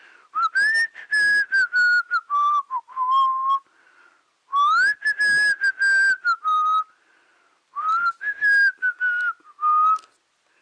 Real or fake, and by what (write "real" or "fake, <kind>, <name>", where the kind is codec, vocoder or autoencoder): real